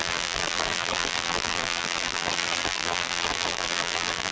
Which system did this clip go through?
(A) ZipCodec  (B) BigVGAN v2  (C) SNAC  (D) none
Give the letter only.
B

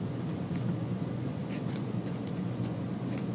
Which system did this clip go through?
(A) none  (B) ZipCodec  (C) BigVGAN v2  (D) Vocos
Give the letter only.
D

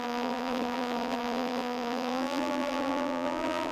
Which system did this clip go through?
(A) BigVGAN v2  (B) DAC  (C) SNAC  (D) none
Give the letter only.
A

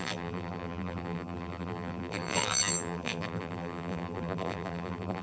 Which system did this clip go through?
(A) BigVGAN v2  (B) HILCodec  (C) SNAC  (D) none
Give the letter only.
A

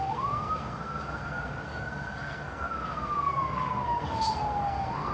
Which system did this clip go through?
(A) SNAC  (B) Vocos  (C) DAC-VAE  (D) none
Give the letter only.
A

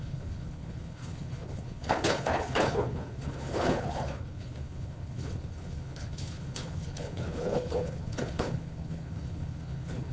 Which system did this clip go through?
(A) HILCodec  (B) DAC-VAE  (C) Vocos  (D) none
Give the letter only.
A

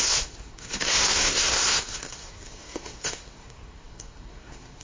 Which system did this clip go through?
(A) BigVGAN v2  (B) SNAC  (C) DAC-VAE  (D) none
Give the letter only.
B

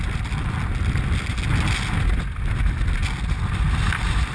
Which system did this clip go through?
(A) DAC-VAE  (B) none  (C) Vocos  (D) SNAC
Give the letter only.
B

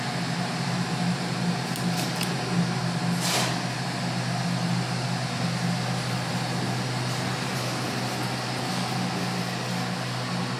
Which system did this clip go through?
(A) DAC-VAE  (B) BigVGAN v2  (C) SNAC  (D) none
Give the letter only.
D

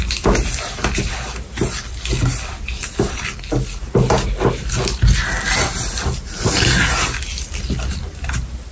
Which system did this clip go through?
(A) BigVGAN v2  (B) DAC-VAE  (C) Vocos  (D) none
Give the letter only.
D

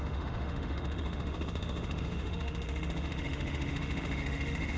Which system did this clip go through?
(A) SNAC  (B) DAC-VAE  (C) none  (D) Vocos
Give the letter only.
B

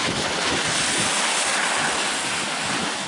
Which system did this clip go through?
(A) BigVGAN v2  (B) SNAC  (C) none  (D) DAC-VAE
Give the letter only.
C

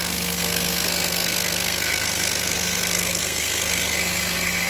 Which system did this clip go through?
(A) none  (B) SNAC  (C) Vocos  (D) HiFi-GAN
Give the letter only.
B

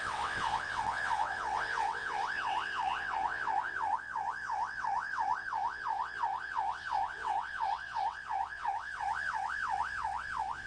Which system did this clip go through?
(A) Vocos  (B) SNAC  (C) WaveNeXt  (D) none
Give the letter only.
C